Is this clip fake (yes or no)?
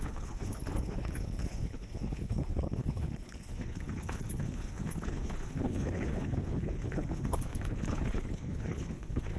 yes